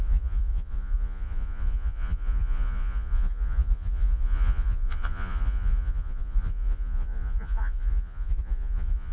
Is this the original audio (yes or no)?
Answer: no